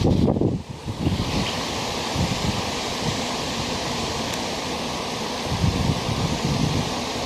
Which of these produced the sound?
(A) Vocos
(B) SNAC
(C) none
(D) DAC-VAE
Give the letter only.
C